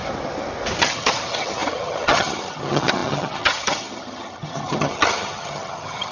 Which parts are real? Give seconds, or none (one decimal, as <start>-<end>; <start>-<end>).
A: 0.0-0.8